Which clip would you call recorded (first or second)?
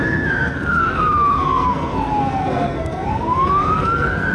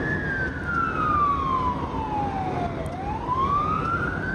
second